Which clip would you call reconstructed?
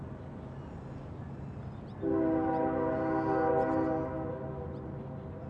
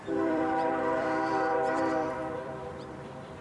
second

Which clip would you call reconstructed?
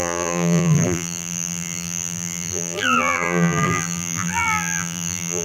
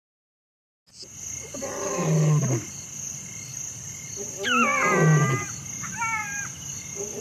first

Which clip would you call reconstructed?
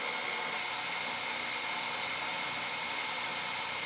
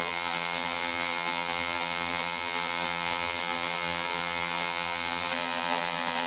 second